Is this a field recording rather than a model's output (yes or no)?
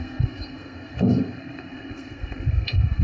no